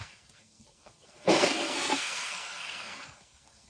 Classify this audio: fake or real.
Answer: fake